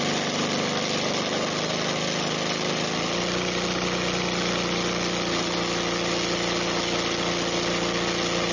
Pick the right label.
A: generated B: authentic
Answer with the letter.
B